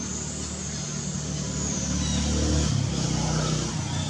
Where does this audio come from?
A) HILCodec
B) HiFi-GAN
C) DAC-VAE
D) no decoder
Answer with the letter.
D